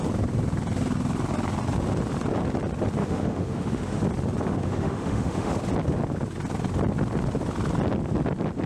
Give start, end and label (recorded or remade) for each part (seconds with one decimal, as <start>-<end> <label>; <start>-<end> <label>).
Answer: 0.0-3.0 recorded; 3.0-4.0 remade; 4.0-4.5 recorded; 4.5-5.5 remade; 5.5-8.7 recorded